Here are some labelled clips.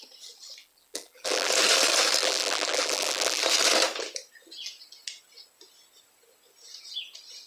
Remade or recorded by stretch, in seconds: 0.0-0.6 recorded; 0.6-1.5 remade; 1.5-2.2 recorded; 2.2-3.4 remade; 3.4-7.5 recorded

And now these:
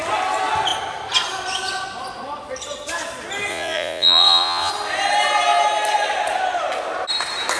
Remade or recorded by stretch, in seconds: 0.0-3.5 recorded; 3.5-4.7 remade; 4.7-7.6 recorded

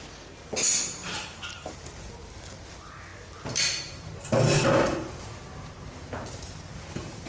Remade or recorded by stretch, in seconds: 0.0-1.0 recorded; 1.0-2.1 remade; 2.1-7.3 recorded

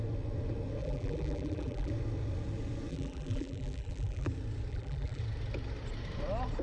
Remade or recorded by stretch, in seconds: 0.0-0.8 recorded; 0.8-1.9 remade; 1.9-2.9 recorded; 2.9-4.3 remade; 4.3-4.7 recorded; 4.7-5.2 remade; 5.2-6.6 recorded